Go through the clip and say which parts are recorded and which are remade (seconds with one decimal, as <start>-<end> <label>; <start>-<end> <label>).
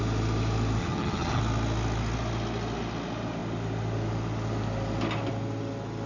0.0-0.8 recorded; 0.8-1.4 remade; 1.4-6.1 recorded